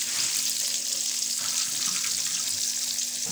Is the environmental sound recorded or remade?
recorded